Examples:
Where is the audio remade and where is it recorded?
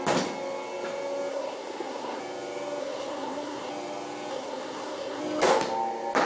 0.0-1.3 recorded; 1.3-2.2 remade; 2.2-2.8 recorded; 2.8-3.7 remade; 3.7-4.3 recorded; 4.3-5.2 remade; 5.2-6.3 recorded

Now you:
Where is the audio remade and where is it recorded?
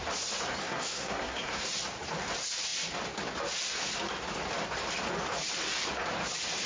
0.0-0.6 recorded; 0.6-1.7 remade; 1.7-6.7 recorded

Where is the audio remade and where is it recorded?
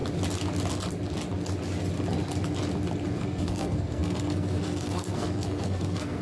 0.0-3.1 recorded; 3.1-6.2 remade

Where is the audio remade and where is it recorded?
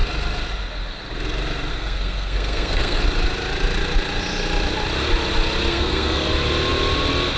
0.0-1.7 recorded; 1.7-3.0 remade; 3.0-5.7 recorded; 5.7-6.3 remade; 6.3-7.4 recorded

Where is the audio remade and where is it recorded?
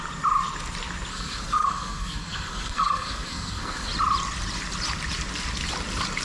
0.0-1.1 recorded; 1.1-3.9 remade; 3.9-6.2 recorded